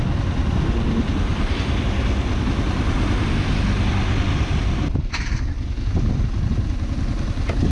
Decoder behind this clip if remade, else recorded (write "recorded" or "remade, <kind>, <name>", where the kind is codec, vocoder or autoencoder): recorded